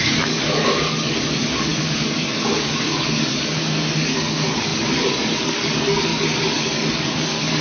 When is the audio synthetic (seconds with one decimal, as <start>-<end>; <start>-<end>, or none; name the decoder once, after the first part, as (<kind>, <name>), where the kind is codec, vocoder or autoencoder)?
0.0-7.6 (codec, DAC)